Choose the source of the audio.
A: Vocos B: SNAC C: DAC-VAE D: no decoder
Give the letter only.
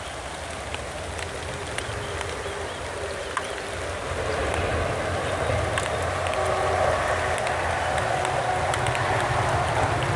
D